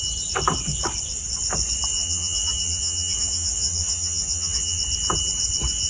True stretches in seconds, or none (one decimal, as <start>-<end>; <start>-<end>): 0.0-1.9; 4.8-5.9